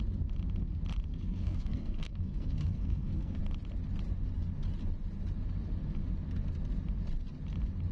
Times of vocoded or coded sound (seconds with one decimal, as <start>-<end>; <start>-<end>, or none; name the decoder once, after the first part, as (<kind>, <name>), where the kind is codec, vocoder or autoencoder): 1.1-3.4 (codec, SNAC)